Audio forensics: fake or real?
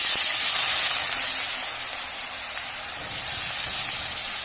real